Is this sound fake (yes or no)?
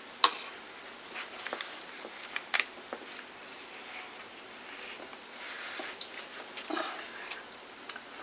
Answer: no